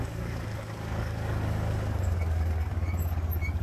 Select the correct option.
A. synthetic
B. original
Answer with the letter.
A